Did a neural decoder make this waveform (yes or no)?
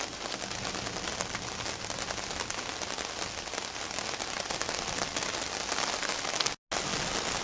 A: no